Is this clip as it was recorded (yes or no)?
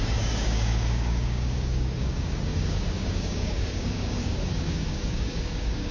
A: no